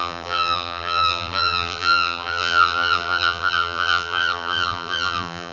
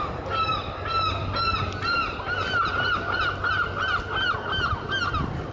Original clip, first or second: second